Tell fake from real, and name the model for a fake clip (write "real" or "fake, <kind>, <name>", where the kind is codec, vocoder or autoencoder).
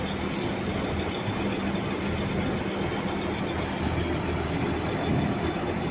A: real